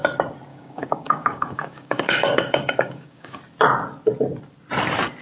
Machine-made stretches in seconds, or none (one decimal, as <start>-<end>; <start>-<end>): 0.5-3.4